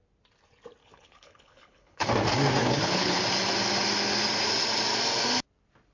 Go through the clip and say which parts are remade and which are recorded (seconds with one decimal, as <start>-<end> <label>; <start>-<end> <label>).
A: 0.0-0.8 recorded; 0.8-2.1 remade; 2.1-2.6 recorded; 2.6-3.2 remade; 3.2-5.9 recorded